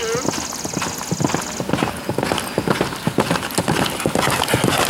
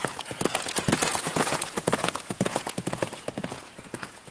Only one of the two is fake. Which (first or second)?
second